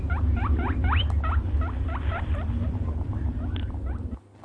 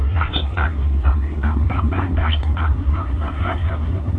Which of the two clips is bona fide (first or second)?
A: first